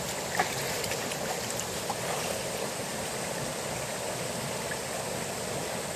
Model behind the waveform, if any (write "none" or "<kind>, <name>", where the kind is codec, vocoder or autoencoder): none